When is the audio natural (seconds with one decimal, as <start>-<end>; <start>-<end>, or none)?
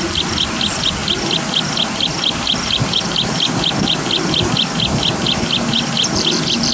0.0-6.7